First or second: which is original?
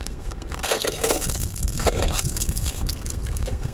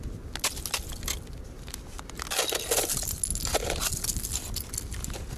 second